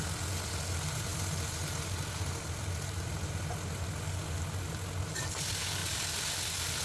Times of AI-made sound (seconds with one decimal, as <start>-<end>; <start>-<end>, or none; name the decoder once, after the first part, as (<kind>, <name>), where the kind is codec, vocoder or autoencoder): none